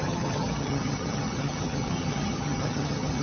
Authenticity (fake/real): fake